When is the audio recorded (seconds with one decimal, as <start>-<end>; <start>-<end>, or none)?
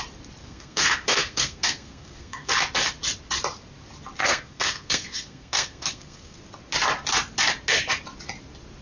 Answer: 0.0-0.4; 2.5-4.2; 6.4-8.8